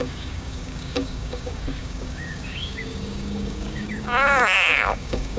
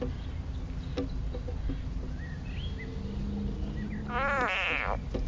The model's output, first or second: first